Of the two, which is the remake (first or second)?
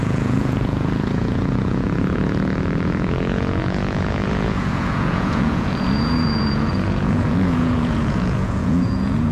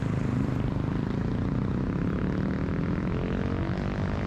first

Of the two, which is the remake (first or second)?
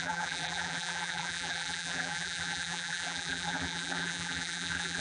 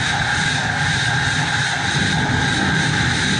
first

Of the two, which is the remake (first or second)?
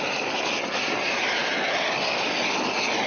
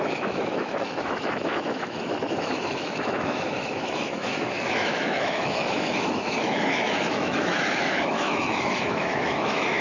second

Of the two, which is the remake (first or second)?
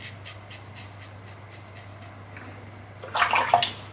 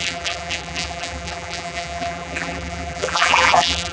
second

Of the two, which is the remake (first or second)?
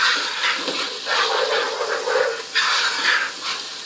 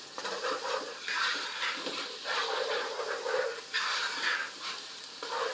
second